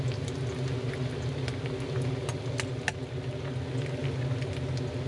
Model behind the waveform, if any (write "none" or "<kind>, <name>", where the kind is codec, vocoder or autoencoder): none